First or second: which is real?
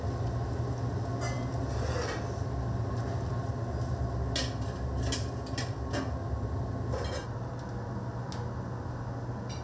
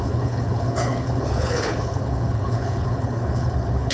first